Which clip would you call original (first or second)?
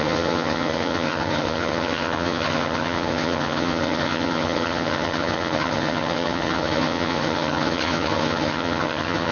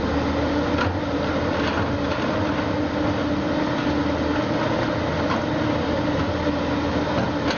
second